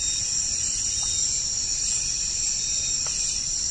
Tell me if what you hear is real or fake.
real